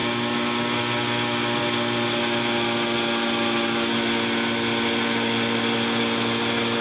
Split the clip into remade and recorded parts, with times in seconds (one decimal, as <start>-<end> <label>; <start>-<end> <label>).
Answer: 0.0-6.8 recorded